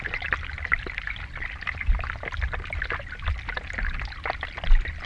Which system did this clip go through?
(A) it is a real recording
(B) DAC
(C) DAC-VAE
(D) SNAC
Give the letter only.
A